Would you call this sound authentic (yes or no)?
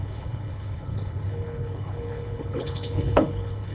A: no